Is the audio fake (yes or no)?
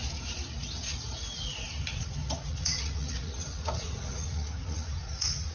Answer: yes